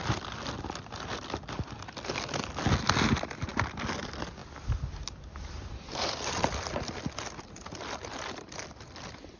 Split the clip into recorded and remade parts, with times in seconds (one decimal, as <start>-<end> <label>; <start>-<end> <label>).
0.0-9.4 recorded